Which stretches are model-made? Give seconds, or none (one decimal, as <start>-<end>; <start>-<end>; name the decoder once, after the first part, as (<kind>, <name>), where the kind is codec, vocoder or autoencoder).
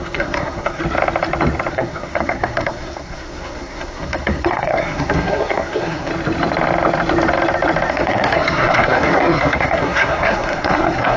0.0-0.8 (codec, SNAC); 1.7-6.1; 7.9-11.2